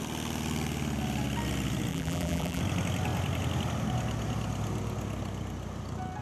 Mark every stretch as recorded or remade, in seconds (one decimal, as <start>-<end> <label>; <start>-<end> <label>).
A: 0.0-1.9 recorded; 1.9-2.6 remade; 2.6-6.2 recorded